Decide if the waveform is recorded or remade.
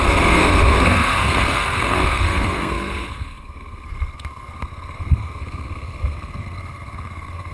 remade